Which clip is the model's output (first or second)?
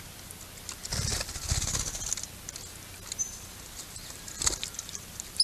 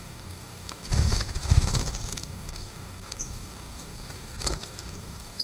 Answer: second